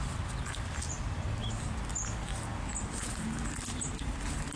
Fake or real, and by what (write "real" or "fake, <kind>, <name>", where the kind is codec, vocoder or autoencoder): real